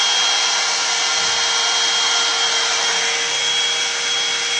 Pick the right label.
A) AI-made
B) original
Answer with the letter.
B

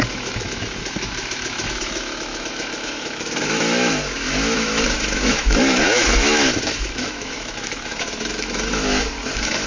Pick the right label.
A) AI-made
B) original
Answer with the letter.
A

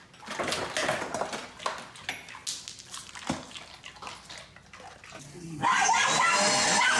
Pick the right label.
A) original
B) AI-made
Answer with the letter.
A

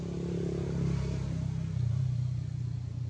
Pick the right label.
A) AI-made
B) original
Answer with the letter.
B